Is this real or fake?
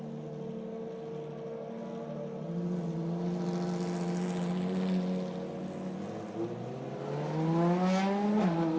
real